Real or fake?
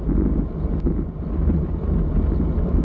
real